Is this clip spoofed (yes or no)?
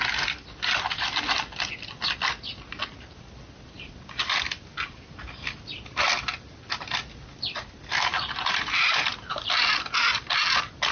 no